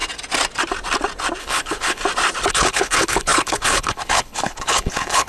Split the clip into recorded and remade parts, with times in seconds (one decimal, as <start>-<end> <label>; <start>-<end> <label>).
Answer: 0.0-1.4 recorded; 1.4-2.0 remade; 2.0-2.5 recorded; 2.5-5.3 remade